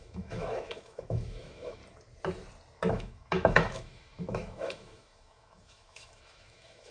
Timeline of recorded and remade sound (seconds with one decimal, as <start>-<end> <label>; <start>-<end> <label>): 0.0-1.8 remade; 1.8-2.9 recorded; 2.9-6.9 remade